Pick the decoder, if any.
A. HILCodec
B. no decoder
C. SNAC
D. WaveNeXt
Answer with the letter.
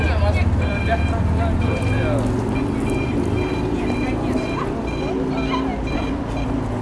B